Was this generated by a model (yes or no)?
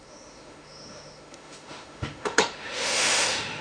yes